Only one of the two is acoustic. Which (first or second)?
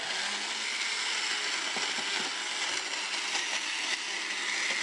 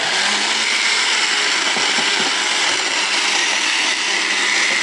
first